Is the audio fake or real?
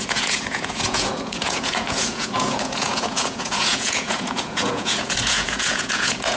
fake